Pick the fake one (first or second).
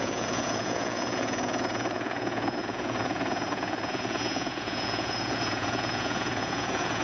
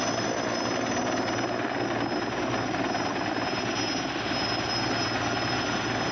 first